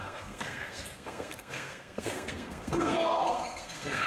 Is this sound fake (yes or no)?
yes